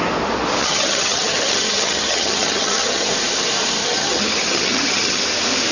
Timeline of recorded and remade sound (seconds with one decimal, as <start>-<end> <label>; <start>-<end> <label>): 0.0-0.6 recorded; 0.6-3.1 remade; 3.1-3.8 recorded; 3.8-5.2 remade; 5.2-5.7 recorded